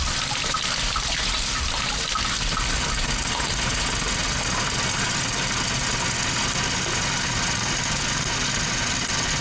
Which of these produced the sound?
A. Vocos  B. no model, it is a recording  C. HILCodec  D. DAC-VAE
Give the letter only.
B